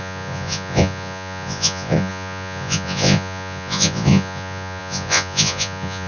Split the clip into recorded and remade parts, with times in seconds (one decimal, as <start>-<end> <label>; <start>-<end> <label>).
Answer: 0.0-6.1 remade